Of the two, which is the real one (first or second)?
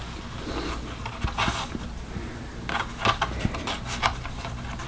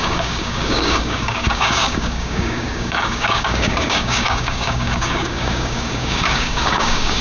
first